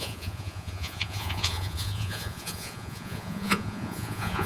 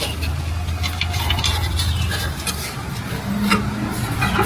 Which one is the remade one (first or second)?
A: first